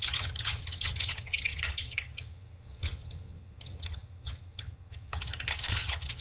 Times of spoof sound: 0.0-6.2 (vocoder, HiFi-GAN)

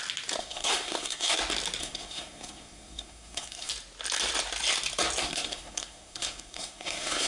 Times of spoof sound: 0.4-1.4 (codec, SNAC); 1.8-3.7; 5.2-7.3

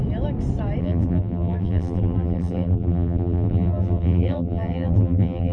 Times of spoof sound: 0.8-5.5 (vocoder, BigVGAN v2)

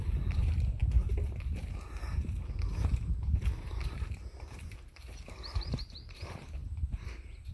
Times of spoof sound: 0.0-0.8 (vocoder, BigVGAN v2); 2.9-7.5

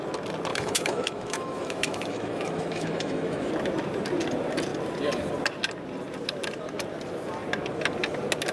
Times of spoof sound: 0.5-3.5 (autoencoder, DAC-VAE)

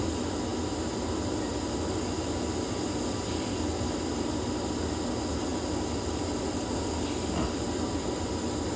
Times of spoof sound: none

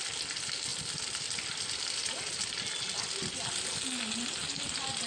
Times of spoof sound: none

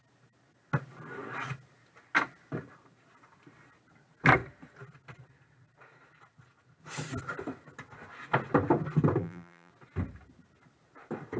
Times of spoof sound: 9.2-9.7 (vocoder, BigVGAN v2)